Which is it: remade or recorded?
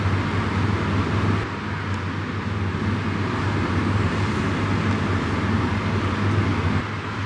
recorded